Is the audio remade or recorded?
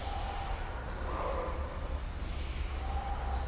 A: recorded